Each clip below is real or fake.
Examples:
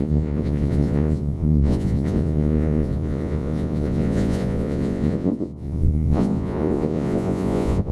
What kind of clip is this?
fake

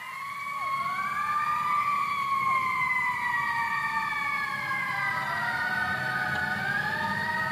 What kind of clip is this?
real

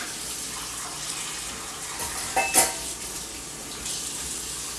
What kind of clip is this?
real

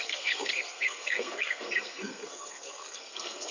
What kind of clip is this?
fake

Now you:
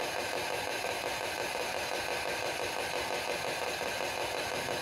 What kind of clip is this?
real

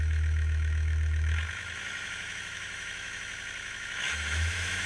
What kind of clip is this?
fake